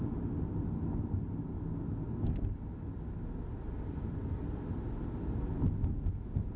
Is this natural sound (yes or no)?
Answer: yes